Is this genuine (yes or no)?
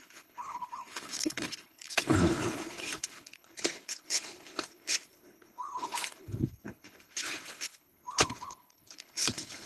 no